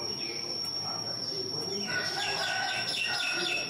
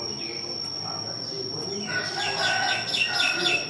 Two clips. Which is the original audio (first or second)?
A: second